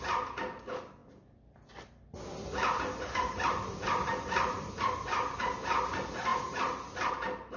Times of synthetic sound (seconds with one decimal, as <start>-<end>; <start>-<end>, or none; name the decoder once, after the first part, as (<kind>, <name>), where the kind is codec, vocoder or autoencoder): 6.3-7.1 (vocoder, BigVGAN v2)